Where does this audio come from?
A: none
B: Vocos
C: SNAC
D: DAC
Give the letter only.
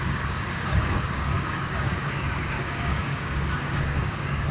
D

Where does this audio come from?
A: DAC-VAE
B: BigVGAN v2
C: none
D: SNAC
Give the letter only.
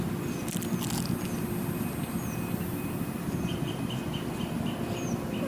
C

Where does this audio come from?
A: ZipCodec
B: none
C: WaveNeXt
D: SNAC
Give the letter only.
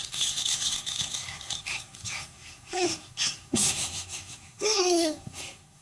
D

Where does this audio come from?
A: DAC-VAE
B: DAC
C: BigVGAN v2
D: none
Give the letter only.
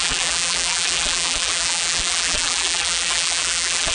C